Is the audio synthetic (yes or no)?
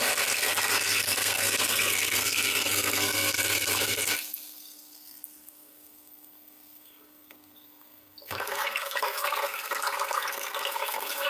yes